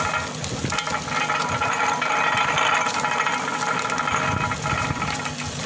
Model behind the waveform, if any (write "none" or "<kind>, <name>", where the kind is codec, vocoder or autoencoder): none